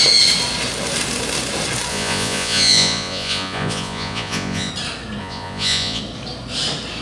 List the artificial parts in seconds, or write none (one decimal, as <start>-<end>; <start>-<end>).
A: 1.9-4.7; 5.2-6.0